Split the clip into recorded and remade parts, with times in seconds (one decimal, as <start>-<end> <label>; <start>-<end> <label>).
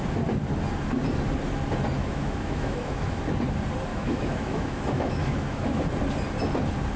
0.0-2.0 recorded; 2.0-3.2 remade; 3.2-3.9 recorded; 3.9-5.8 remade; 5.8-7.0 recorded